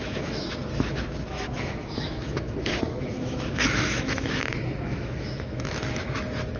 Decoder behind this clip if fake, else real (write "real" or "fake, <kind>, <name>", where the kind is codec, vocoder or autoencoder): fake, autoencoder, DAC-VAE